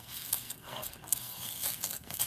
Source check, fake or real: fake